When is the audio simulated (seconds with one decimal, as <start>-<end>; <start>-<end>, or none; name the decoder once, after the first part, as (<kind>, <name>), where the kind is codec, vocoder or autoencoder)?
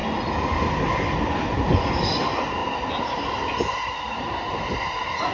none